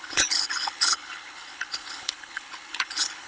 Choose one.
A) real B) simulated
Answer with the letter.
B